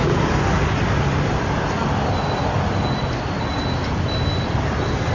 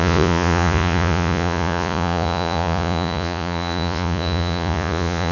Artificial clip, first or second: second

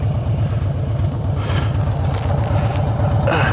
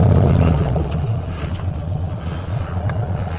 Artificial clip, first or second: second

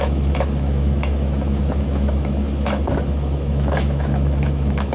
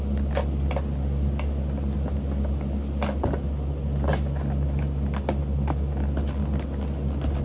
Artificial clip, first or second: first